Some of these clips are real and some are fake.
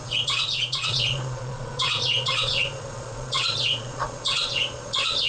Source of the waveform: fake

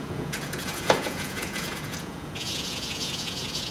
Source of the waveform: fake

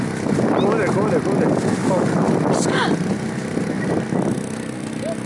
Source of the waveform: real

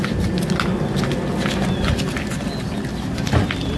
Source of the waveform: real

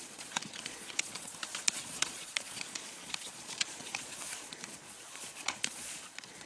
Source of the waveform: fake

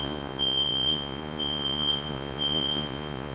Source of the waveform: fake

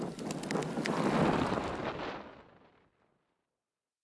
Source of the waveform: real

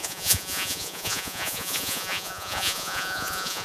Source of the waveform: fake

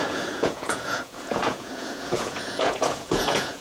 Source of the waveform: fake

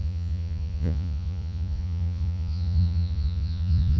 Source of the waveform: fake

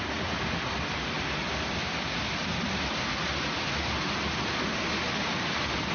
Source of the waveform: real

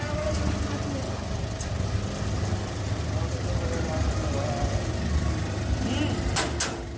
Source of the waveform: real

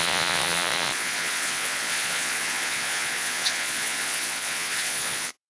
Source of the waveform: fake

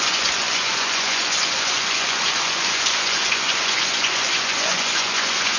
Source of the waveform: fake